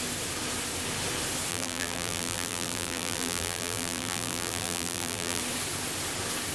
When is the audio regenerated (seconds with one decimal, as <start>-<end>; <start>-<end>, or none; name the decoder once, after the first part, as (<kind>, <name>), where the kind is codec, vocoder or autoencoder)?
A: 1.5-5.4 (vocoder, BigVGAN v2)